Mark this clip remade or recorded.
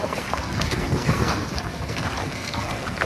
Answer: remade